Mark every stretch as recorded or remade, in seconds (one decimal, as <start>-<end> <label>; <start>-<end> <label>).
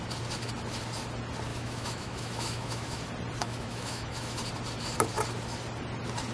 0.0-1.5 recorded; 1.5-3.0 remade; 3.0-3.4 recorded; 3.4-4.4 remade; 4.4-6.3 recorded